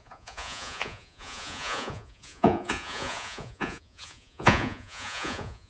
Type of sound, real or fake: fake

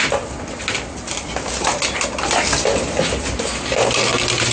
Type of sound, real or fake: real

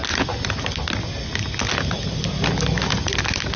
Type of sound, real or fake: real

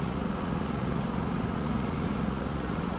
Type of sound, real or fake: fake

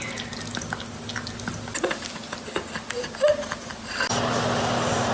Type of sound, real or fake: real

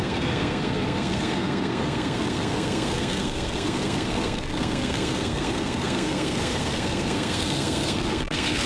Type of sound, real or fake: fake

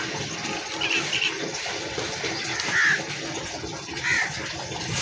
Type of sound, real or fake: real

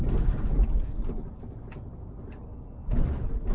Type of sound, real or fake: real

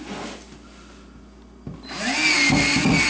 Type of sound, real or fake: real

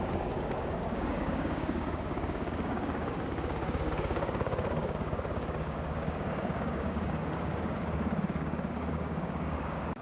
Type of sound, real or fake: fake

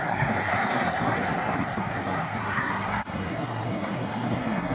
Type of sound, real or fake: fake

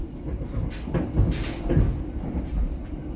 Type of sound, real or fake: real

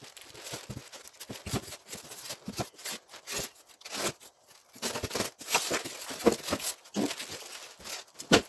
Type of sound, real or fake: real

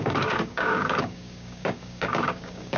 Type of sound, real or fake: fake